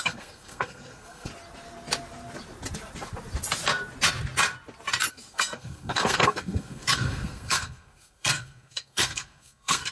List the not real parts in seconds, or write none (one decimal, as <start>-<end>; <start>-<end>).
0.0-1.3; 5.1-9.9